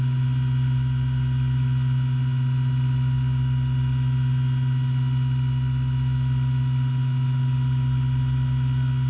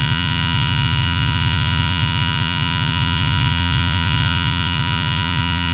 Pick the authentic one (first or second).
first